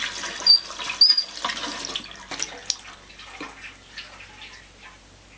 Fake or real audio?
real